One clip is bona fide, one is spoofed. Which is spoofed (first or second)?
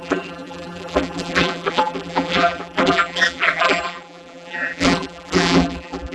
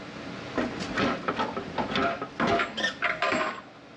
first